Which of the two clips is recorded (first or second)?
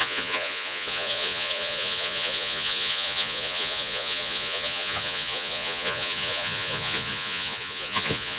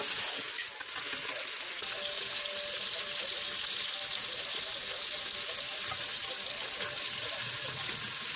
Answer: second